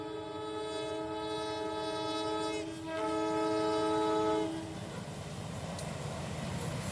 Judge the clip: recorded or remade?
recorded